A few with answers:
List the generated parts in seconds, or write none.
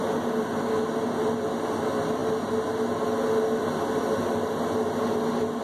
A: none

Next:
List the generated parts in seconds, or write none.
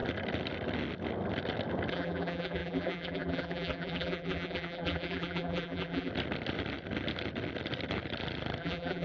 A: 1.9-6.1 (vocoder, BigVGAN v2); 8.6-9.0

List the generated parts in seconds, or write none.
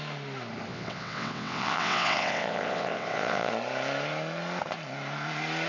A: 0.7-3.5 (vocoder, WaveNeXt)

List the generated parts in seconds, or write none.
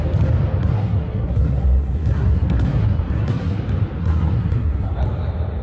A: 0.6-3.6 (codec, SNAC); 4.0-4.9